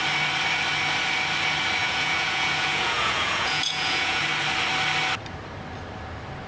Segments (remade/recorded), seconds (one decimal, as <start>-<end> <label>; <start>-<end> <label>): 0.0-1.8 recorded; 1.8-4.2 remade; 4.2-6.5 recorded